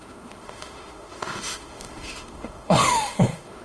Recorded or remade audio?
remade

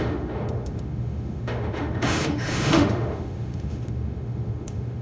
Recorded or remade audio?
remade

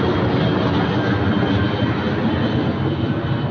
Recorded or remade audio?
recorded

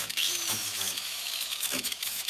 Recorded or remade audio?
remade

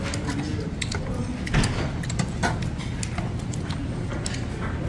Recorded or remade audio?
recorded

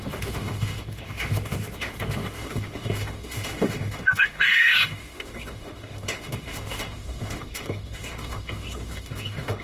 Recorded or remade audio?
remade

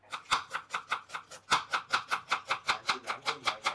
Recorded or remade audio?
recorded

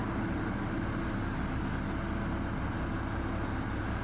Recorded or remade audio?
recorded